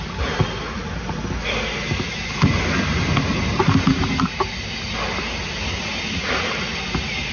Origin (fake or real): real